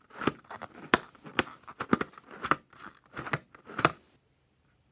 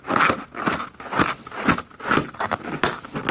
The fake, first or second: first